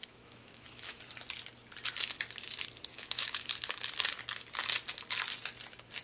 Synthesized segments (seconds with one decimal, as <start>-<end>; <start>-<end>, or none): 0.0-1.0; 2.9-3.5